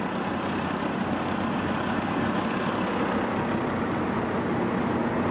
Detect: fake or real real